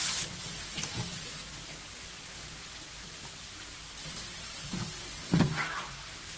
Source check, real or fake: real